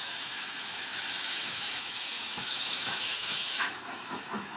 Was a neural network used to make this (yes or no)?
yes